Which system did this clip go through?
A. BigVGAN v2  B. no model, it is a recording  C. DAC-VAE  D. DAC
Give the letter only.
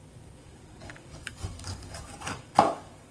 D